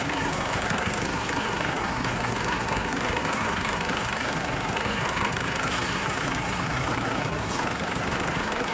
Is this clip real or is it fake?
fake